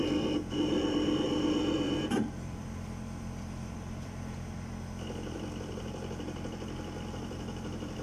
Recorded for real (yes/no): no